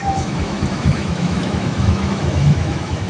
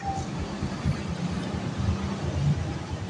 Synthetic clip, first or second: first